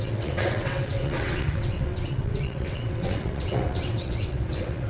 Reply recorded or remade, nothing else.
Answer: remade